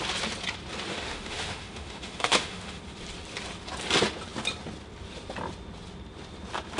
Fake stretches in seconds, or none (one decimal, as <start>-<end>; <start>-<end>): 0.9-2.8